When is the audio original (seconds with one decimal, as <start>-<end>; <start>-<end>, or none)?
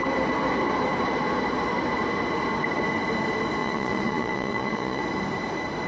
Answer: 0.0-3.6; 5.0-5.9